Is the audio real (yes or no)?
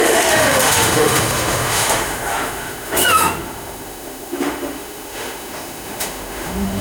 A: no